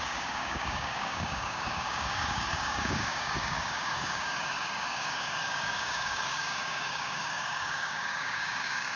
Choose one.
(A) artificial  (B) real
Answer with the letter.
A